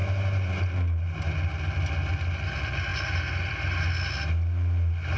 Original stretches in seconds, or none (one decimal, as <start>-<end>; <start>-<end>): 0.0-5.2